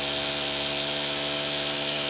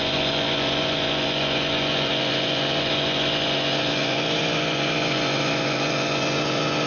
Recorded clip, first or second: first